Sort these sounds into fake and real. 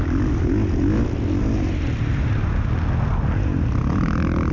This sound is real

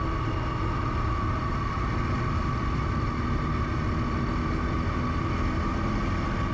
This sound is real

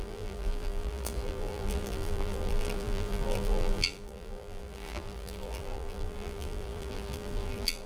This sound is fake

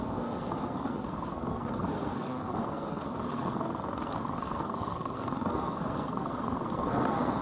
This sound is fake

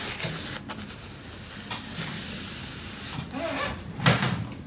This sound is real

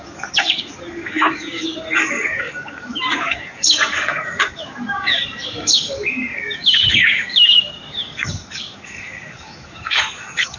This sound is fake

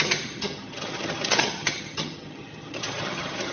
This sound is fake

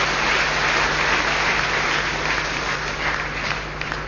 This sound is real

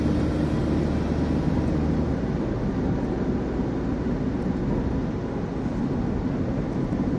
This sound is real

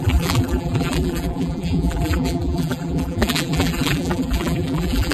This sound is fake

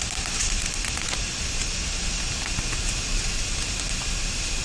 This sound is real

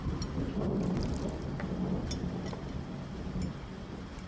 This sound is real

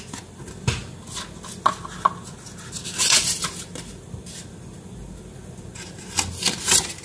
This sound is real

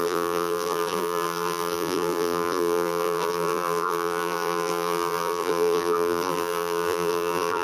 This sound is fake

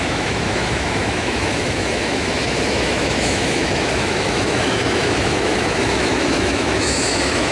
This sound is fake